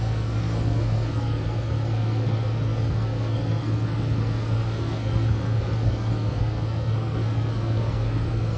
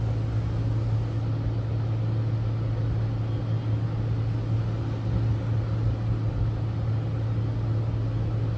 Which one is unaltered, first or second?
second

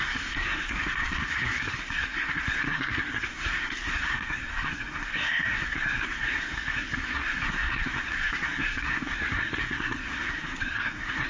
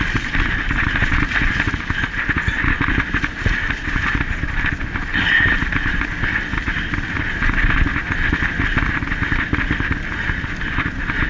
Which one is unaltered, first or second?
second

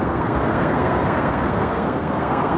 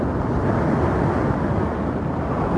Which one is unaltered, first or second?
second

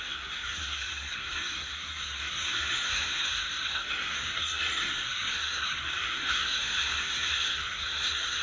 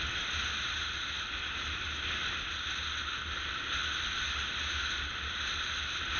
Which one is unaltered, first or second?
second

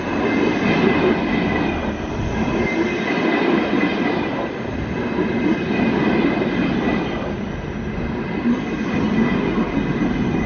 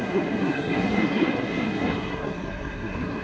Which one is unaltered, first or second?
first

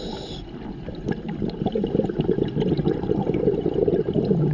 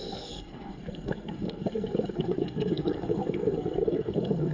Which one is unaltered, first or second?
first